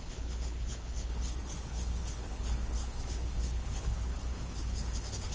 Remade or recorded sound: remade